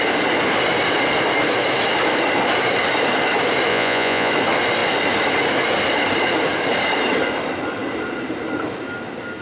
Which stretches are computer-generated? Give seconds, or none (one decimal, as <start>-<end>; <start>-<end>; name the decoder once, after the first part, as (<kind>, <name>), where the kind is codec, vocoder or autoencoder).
3.7-4.3 (vocoder, Vocos)